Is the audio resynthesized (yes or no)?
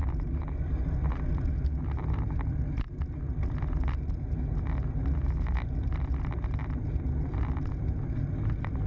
no